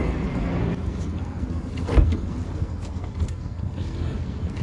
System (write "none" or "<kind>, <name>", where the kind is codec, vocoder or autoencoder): codec, SNAC